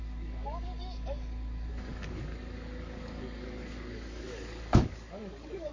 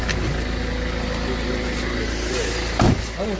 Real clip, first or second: second